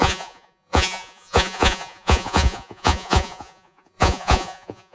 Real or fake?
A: fake